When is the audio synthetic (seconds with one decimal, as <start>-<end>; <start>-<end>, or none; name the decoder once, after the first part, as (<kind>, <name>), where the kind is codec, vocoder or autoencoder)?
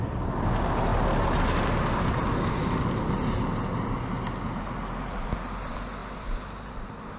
none